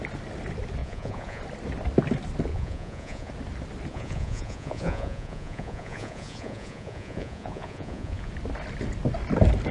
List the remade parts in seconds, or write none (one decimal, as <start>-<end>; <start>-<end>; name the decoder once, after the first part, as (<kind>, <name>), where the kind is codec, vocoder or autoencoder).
0.8-1.4 (vocoder, Vocos); 2.5-3.3; 3.9-8.3